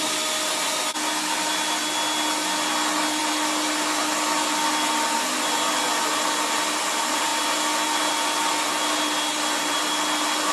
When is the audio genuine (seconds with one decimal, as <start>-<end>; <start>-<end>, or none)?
0.0-10.5